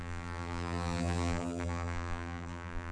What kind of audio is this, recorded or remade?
remade